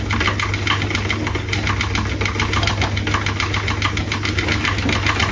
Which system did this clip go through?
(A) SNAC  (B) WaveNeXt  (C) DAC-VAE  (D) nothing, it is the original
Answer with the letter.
D